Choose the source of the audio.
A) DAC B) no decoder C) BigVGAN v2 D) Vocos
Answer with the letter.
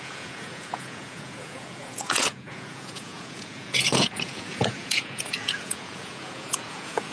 D